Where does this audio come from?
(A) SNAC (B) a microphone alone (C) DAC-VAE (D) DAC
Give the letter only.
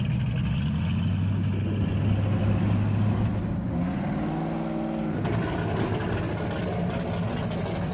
B